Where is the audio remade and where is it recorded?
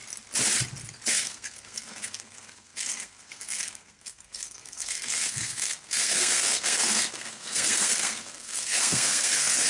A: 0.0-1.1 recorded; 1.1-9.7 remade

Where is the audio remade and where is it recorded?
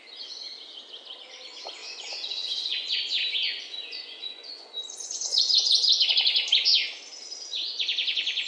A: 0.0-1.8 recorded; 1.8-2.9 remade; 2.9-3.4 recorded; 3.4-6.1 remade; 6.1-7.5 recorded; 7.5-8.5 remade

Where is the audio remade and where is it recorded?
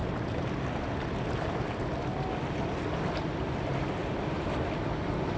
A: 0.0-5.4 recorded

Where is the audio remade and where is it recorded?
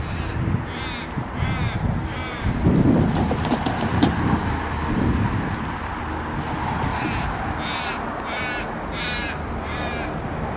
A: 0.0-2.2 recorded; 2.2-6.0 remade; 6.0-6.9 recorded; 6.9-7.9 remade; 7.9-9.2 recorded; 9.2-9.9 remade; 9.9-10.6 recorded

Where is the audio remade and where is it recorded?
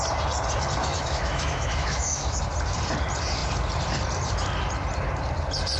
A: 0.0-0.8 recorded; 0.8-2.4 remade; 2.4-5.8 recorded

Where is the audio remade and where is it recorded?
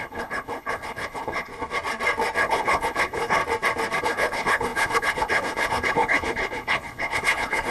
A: 0.0-1.5 remade; 1.5-2.4 recorded; 2.4-3.4 remade; 3.4-4.0 recorded; 4.0-7.7 remade